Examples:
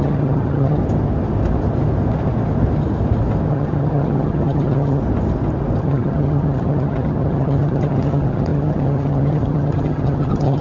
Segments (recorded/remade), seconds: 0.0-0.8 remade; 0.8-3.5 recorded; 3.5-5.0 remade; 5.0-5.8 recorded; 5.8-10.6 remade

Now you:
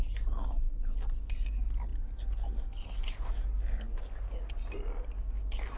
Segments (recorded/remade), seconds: 0.0-5.8 recorded